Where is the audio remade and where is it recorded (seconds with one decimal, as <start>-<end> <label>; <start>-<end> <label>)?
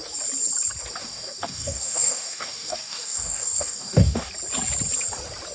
0.0-1.0 recorded; 1.0-4.3 remade; 4.3-5.5 recorded